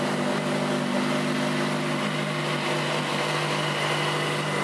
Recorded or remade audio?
recorded